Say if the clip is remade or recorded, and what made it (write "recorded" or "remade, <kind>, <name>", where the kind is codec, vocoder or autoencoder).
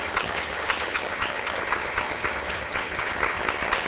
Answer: remade, vocoder, HiFi-GAN